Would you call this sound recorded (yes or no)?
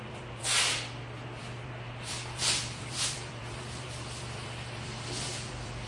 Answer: no